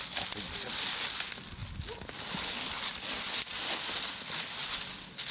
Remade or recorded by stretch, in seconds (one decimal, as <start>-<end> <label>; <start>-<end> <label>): 0.0-5.3 recorded